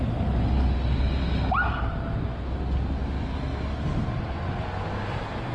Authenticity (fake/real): real